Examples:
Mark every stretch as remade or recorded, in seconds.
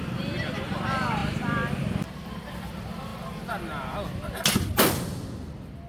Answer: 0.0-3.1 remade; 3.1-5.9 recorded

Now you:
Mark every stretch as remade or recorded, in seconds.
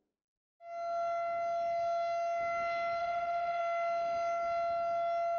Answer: 0.0-3.0 recorded; 3.0-3.6 remade; 3.6-5.4 recorded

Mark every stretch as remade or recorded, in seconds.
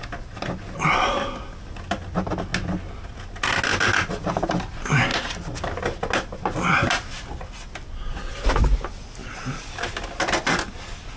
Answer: 0.0-5.1 recorded; 5.1-5.8 remade; 5.8-9.2 recorded; 9.2-9.9 remade; 9.9-11.2 recorded